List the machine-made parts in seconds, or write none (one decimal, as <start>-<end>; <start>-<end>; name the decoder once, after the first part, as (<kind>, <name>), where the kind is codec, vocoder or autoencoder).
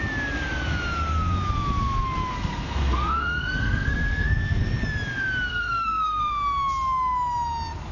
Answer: 2.3-4.6 (codec, SNAC); 5.5-6.3